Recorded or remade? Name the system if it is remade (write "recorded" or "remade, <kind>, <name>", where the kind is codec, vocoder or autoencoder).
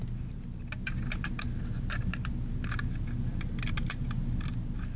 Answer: remade, vocoder, BigVGAN v2